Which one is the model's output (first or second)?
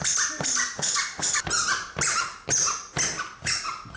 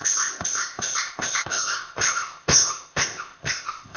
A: second